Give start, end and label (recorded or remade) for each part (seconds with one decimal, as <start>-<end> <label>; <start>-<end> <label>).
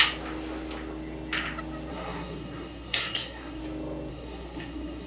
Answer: 0.0-1.9 recorded; 1.9-3.6 remade; 3.6-4.1 recorded; 4.1-5.1 remade